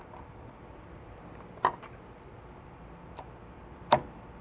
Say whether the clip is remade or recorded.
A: recorded